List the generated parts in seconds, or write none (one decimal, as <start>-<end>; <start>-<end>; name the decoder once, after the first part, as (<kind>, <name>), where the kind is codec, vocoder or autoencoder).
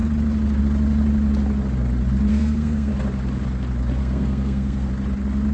2.3-2.9 (codec, SNAC); 4.0-4.9